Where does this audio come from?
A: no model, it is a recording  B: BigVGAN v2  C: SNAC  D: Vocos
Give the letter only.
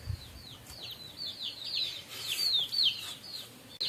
A